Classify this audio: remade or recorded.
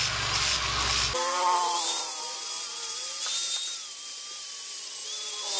recorded